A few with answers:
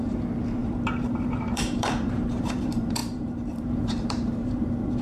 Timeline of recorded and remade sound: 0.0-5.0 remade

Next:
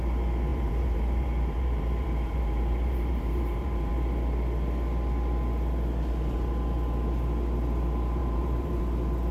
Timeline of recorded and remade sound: 0.0-0.5 recorded; 0.5-3.9 remade; 3.9-8.2 recorded; 8.2-8.8 remade; 8.8-9.3 recorded

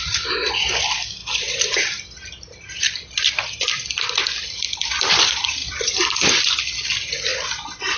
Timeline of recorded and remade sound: 0.0-1.2 remade; 1.2-4.5 recorded; 4.5-8.0 remade